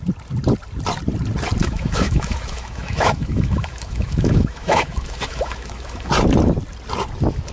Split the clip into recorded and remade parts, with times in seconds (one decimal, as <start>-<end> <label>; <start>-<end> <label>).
0.0-1.6 recorded; 1.6-6.1 remade; 6.1-7.5 recorded